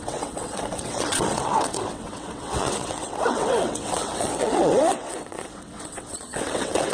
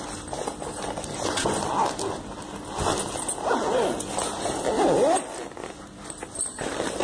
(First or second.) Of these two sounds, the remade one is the first